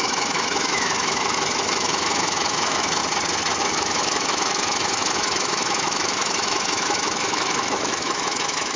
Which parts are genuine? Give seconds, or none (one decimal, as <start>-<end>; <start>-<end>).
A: 3.0-3.6